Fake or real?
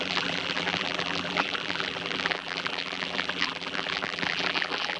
fake